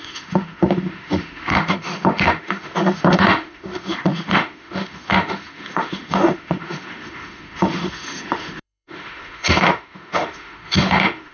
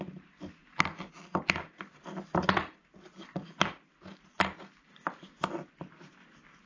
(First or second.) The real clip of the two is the second